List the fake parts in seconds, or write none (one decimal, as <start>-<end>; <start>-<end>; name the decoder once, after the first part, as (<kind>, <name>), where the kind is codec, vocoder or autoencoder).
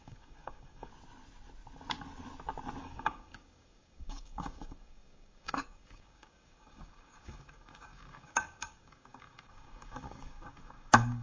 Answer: 0.0-0.9 (codec, DAC); 2.8-11.2